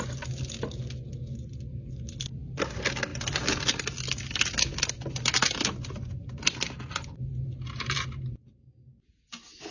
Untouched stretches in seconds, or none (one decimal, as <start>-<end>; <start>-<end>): 0.0-9.7